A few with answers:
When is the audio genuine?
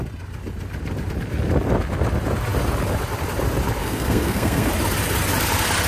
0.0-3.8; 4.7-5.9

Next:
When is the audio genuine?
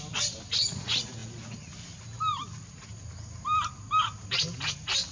0.0-5.1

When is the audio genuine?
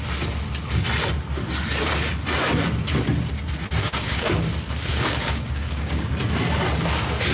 0.0-3.8; 4.3-4.9; 6.1-7.3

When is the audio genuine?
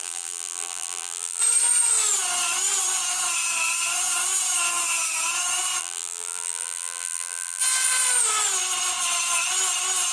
1.4-5.8; 7.6-10.1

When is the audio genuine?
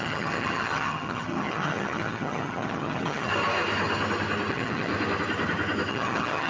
3.3-4.5; 4.9-5.9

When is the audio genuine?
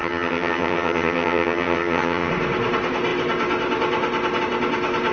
2.3-5.1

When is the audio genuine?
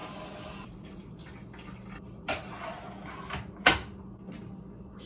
0.0-5.1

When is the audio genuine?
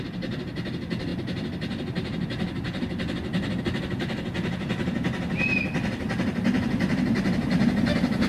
0.0-8.3